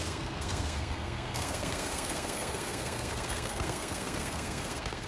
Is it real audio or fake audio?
fake